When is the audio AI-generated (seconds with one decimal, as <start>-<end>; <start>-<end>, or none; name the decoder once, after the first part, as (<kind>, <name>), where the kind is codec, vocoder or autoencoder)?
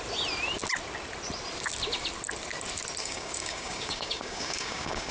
3.0-5.1 (codec, DAC)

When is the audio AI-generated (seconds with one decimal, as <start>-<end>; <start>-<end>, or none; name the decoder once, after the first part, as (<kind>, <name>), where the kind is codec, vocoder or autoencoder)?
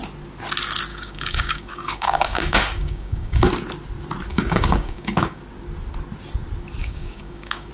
0.9-3.5 (codec, DAC); 4.3-5.4; 6.8-7.7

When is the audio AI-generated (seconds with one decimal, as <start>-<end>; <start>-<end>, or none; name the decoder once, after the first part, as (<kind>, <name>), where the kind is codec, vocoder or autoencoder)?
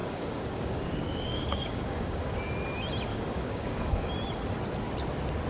0.0-2.5 (codec, DAC); 3.1-4.1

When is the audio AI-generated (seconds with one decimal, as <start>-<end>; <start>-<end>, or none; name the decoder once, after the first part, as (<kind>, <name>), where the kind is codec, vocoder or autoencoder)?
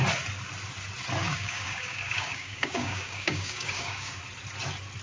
1.2-4.2 (codec, DAC)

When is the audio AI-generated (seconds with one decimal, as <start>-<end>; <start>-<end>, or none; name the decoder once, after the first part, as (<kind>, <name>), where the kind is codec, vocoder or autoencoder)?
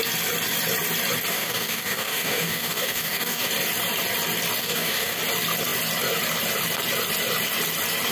1.3-3.5 (codec, DAC); 4.6-5.2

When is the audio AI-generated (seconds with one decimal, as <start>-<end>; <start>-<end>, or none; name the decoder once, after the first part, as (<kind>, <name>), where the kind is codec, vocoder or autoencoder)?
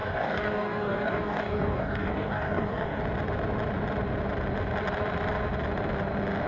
0.0-3.0 (codec, DAC)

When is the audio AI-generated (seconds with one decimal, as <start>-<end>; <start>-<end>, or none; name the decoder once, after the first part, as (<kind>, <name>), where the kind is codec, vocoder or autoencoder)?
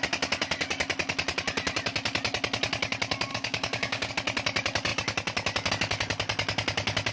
3.3-4.1 (codec, DAC)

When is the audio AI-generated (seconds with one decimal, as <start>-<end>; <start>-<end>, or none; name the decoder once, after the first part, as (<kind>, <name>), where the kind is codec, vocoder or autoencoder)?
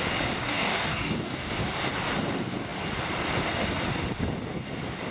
0.4-1.5 (codec, DAC)